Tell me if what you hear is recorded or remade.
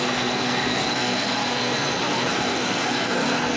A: remade